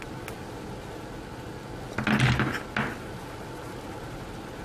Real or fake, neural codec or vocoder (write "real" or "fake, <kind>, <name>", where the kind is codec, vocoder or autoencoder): real